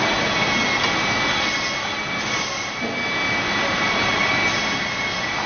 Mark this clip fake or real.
real